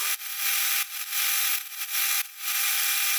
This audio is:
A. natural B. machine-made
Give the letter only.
A